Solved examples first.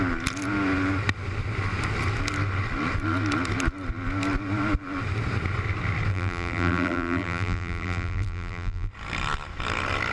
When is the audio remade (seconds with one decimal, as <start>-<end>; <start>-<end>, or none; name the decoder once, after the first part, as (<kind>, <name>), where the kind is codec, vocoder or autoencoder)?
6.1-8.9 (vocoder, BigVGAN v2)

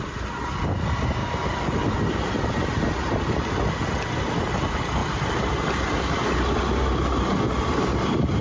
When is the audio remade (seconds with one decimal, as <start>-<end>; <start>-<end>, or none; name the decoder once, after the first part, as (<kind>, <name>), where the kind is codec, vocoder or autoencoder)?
1.2-1.9 (vocoder, BigVGAN v2)

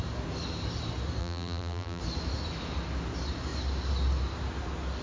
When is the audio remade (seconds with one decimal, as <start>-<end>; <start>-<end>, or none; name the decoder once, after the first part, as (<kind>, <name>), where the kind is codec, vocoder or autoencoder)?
1.2-2.0 (vocoder, BigVGAN v2)

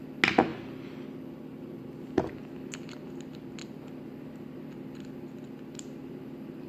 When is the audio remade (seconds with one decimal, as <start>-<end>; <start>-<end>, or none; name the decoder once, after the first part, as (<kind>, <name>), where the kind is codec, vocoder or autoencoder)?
0.5-2.3 (vocoder, BigVGAN v2)

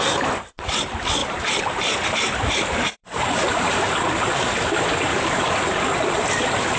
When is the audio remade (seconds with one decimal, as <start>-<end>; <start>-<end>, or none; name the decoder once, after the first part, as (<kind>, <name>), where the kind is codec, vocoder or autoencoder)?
1.2-3.6 (vocoder, BigVGAN v2); 5.1-6.1

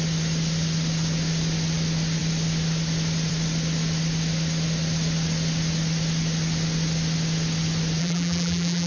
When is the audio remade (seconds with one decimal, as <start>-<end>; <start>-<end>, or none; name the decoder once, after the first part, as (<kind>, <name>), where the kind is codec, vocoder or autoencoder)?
8.0-8.9 (vocoder, BigVGAN v2)

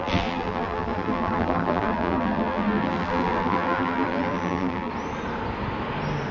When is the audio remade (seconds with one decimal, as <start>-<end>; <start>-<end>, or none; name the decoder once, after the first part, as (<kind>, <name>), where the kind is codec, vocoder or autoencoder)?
0.0-4.9 (vocoder, BigVGAN v2)

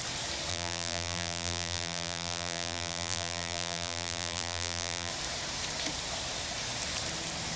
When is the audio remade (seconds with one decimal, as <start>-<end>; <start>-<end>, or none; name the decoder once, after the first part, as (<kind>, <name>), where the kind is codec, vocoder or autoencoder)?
0.5-5.1 (vocoder, BigVGAN v2)